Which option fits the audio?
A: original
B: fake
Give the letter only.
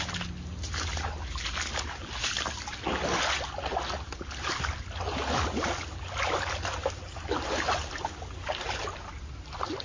A